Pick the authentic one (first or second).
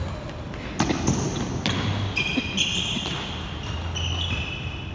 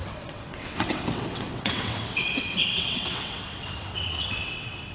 first